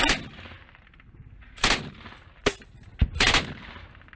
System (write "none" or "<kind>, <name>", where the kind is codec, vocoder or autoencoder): none